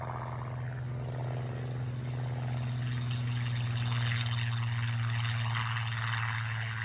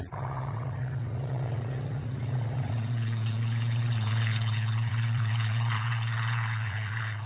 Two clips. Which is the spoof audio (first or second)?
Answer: second